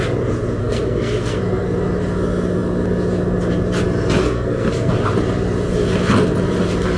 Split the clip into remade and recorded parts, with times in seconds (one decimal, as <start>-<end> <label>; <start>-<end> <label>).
0.0-0.6 recorded; 0.6-1.4 remade; 1.4-4.2 recorded; 4.2-4.9 remade; 4.9-7.0 recorded